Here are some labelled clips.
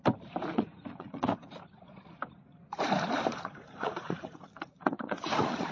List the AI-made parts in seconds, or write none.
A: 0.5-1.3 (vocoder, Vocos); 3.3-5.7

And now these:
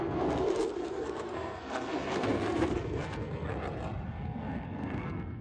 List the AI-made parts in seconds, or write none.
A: 0.0-3.5 (codec, SNAC); 4.1-5.4

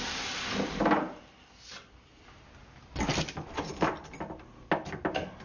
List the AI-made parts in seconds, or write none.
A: 3.1-3.7 (vocoder, BigVGAN v2)

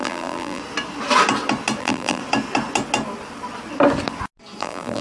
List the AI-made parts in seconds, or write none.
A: 0.0-0.6 (vocoder, BigVGAN v2); 1.8-2.2; 4.6-5.0

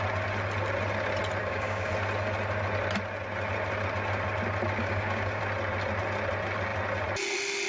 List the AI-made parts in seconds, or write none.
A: 1.4-1.9 (codec, DAC); 4.8-5.4